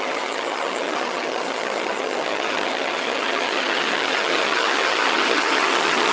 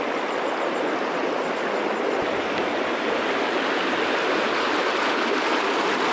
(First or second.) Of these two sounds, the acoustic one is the second